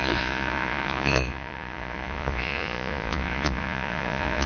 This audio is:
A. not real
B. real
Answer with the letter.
A